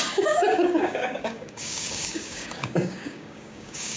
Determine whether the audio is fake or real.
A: fake